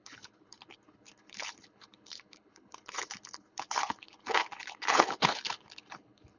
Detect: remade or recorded remade